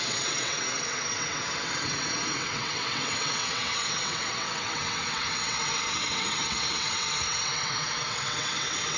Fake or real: fake